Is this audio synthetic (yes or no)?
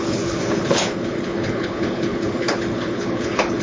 yes